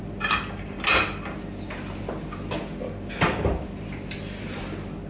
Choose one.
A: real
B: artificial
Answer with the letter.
A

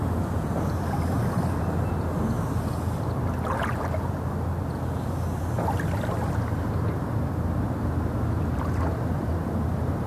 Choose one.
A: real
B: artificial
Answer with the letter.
A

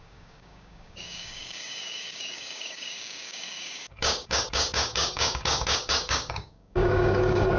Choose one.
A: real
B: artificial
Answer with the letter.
B